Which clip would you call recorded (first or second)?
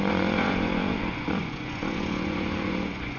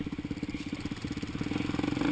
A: second